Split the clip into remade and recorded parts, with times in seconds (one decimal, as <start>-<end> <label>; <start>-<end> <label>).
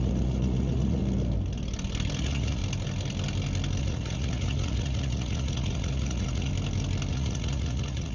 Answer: 0.0-1.0 remade; 1.0-2.2 recorded; 2.2-2.6 remade; 2.6-3.8 recorded; 3.8-6.5 remade; 6.5-7.1 recorded; 7.1-8.1 remade